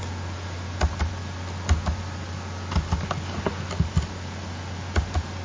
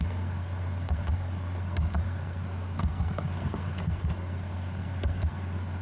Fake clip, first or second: second